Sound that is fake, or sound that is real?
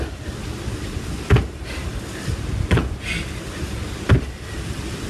real